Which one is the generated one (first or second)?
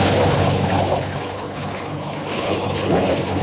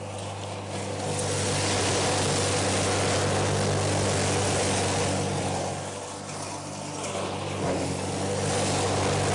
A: first